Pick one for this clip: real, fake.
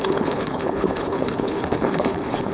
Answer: fake